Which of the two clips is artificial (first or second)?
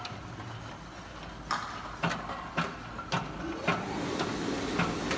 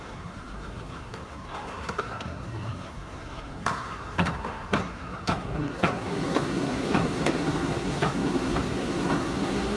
second